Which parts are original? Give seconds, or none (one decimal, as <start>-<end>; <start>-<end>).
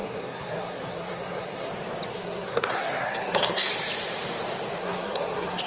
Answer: 1.7-2.1; 3.7-4.8